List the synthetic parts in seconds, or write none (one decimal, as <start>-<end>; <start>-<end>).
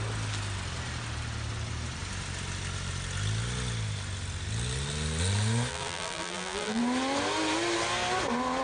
5.7-6.8